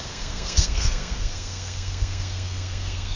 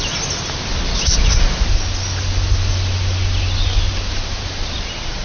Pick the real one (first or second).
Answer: second